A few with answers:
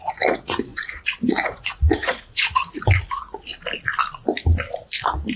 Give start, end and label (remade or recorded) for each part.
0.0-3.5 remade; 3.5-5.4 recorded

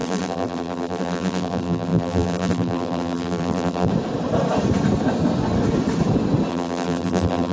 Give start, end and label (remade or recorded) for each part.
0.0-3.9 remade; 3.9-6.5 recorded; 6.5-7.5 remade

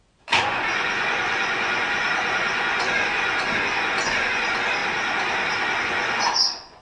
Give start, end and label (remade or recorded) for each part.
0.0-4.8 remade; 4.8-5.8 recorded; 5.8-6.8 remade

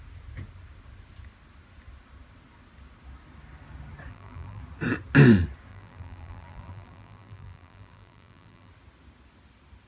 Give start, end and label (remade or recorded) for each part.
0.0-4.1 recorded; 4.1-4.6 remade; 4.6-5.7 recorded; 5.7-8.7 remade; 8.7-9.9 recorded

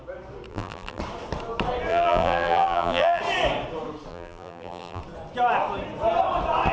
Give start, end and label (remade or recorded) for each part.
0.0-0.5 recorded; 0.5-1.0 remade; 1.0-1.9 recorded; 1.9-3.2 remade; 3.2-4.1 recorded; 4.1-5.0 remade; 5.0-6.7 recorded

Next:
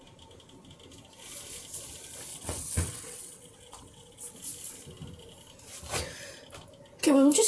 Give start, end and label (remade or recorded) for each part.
0.0-2.3 recorded; 2.3-4.3 remade; 4.3-7.5 recorded

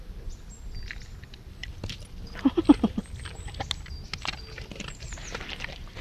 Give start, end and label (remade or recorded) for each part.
0.0-6.0 recorded

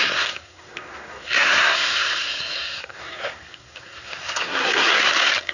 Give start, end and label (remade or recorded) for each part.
0.0-5.5 remade